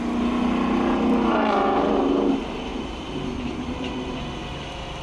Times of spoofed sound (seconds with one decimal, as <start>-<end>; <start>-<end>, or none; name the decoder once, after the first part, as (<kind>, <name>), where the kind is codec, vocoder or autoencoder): none